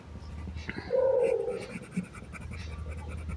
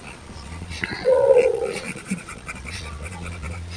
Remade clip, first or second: second